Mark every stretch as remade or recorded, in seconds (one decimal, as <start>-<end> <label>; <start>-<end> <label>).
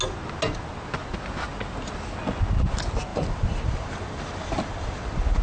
0.0-3.1 recorded; 3.1-5.4 remade